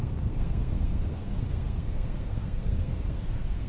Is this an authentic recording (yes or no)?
no